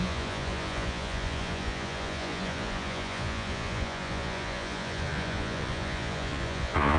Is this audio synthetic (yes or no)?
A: yes